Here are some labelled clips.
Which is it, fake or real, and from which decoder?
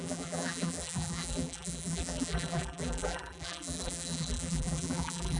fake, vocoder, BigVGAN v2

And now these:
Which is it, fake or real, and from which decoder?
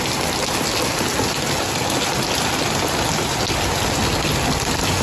real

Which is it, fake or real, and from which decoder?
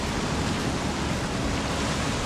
real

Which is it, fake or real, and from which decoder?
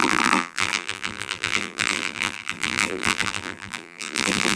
fake, vocoder, BigVGAN v2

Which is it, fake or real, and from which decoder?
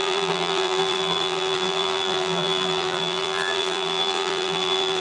fake, vocoder, BigVGAN v2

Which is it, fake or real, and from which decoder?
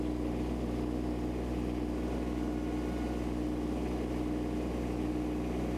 real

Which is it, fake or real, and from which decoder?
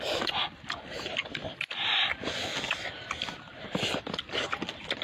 real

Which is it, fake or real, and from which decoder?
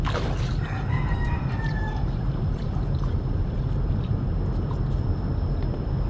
fake, vocoder, BigVGAN v2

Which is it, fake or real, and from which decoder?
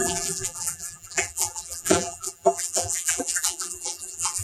fake, vocoder, BigVGAN v2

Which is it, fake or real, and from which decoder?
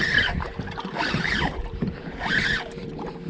fake, vocoder, BigVGAN v2